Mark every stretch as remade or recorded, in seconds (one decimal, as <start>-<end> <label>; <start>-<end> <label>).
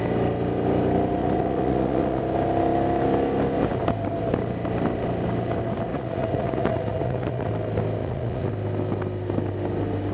0.0-1.2 recorded; 1.2-2.2 remade; 2.2-5.9 recorded; 5.9-7.5 remade; 7.5-8.0 recorded; 8.0-8.5 remade; 8.5-10.1 recorded